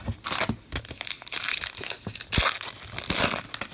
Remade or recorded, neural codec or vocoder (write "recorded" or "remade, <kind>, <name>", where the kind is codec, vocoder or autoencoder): recorded